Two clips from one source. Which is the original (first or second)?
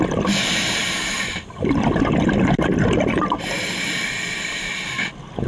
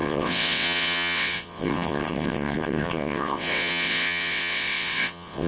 first